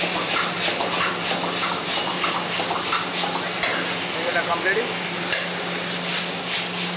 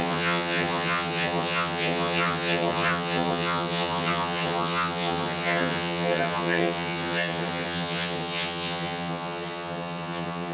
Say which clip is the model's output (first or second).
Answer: second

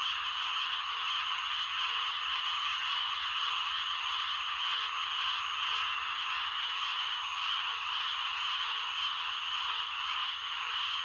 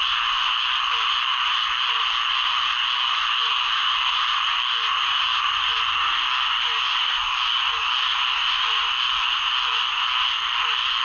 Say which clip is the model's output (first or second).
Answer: first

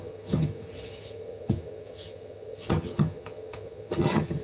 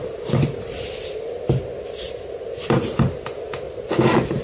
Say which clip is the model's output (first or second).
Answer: first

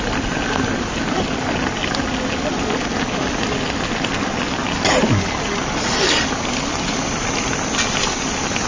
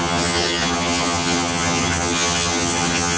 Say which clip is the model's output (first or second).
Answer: second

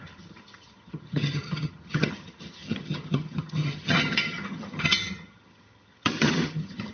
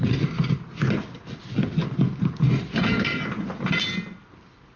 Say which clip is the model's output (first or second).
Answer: first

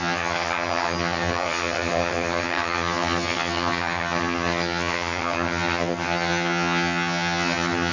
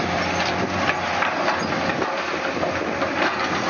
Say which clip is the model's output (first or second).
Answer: first